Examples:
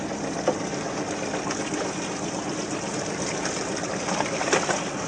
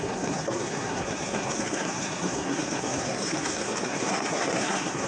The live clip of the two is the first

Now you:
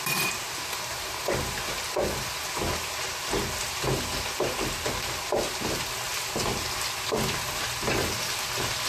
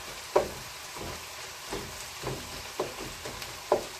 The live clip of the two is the first